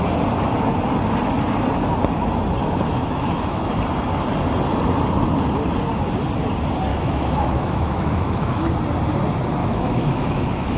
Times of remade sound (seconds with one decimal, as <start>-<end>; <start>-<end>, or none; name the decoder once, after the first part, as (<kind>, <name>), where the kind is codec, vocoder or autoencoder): 2.6-3.8 (autoencoder, DAC-VAE); 6.9-8.7; 9.6-10.8